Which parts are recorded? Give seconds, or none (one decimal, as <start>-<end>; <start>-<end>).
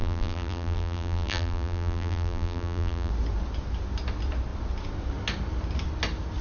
3.1-6.4